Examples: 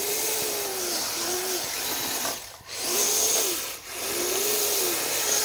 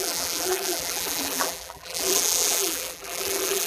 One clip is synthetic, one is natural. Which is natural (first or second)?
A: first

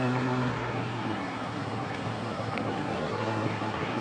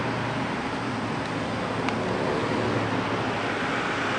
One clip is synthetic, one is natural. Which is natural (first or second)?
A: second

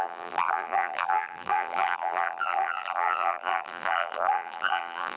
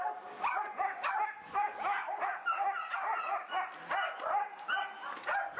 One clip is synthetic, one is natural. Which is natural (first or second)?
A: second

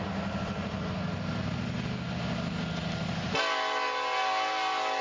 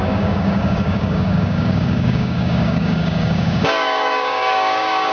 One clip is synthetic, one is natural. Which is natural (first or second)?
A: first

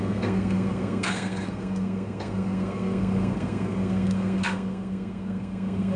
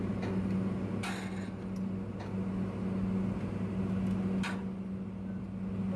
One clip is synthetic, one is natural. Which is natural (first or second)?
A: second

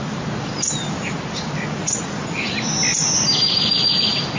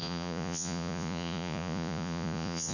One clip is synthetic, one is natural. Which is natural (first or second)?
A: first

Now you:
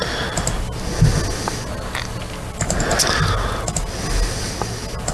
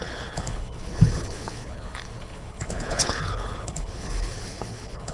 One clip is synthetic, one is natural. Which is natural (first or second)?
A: first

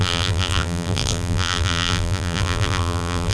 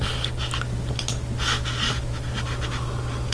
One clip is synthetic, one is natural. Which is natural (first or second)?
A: second